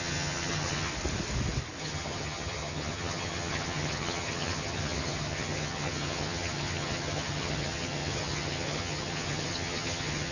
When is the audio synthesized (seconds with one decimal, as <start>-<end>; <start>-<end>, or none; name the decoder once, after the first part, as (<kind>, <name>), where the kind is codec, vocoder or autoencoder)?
0.0-0.9 (vocoder, HiFi-GAN); 1.8-10.3